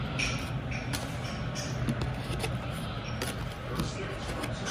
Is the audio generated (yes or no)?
no